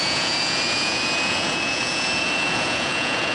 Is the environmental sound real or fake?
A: fake